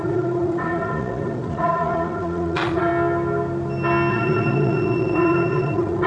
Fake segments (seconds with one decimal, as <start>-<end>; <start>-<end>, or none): 0.0-2.9; 4.1-6.1